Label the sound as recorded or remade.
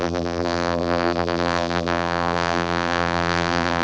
remade